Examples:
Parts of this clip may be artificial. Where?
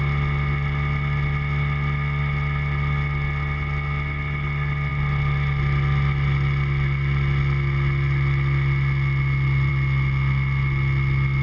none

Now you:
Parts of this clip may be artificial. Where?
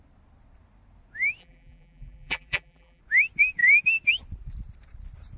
1.4-3.0 (vocoder, BigVGAN v2)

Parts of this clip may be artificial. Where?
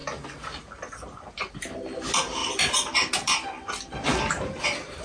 none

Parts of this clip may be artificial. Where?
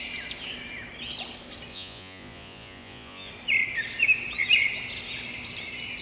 1.7-3.3 (vocoder, Vocos)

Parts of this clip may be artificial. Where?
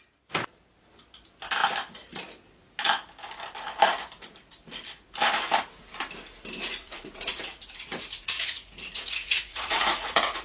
6.8-10.4 (vocoder, Vocos)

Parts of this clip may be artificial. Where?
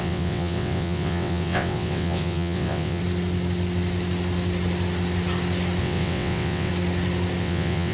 0.0-3.0 (vocoder, WaveNeXt); 5.8-6.7; 7.4-7.9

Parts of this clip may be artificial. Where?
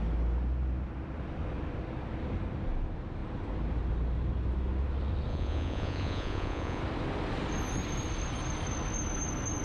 5.3-6.8 (vocoder, Vocos)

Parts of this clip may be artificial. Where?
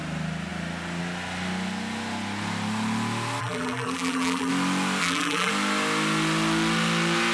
3.4-4.5 (vocoder, BigVGAN v2); 5.0-5.5